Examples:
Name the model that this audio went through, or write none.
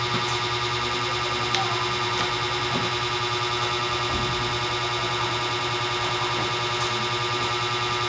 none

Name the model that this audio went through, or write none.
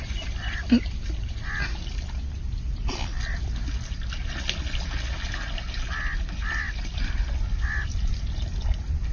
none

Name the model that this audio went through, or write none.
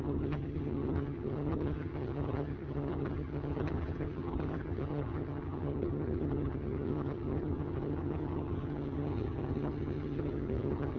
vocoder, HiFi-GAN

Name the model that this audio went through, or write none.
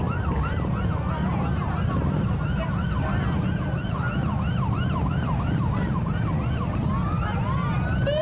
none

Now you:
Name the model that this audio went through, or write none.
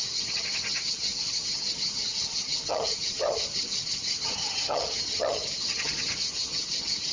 vocoder, HiFi-GAN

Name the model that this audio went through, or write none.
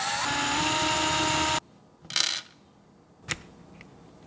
none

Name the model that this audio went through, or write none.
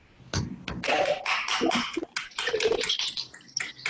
none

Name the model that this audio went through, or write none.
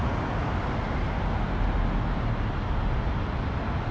none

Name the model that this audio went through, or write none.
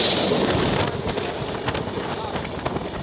none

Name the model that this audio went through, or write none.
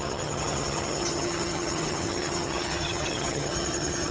vocoder, HiFi-GAN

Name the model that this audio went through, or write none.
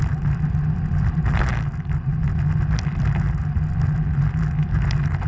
none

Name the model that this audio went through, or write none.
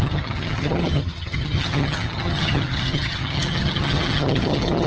vocoder, HiFi-GAN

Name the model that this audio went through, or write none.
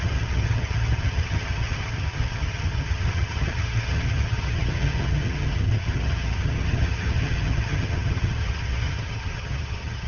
vocoder, HiFi-GAN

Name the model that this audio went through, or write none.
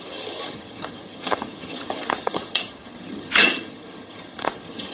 vocoder, HiFi-GAN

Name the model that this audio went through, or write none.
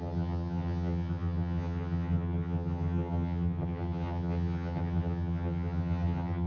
vocoder, HiFi-GAN